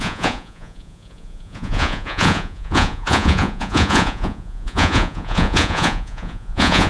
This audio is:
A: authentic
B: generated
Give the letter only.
B